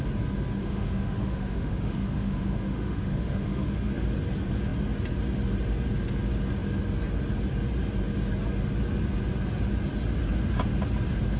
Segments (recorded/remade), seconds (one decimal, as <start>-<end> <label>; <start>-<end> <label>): 0.0-0.6 recorded; 0.6-3.9 remade; 3.9-11.4 recorded